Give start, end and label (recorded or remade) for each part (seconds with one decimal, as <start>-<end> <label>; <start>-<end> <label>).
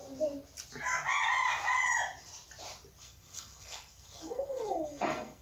0.0-3.0 recorded; 3.0-5.4 remade